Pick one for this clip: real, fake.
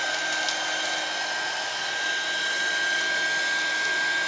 real